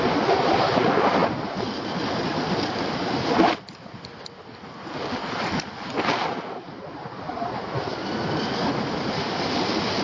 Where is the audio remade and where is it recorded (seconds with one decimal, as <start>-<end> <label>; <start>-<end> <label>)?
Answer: 0.0-10.0 recorded